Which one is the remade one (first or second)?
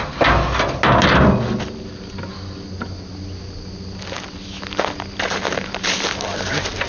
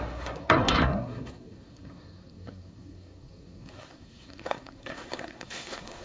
second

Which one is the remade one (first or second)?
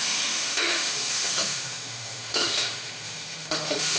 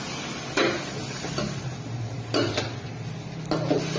first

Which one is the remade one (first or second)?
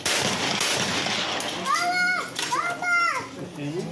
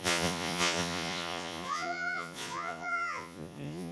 second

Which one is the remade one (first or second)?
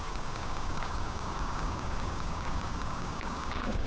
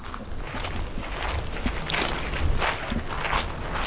first